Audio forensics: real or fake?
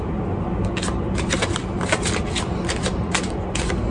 real